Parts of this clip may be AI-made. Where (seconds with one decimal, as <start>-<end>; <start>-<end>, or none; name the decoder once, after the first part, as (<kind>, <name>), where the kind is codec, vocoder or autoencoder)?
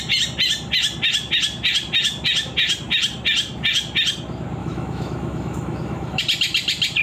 4.6-6.2 (autoencoder, DAC-VAE)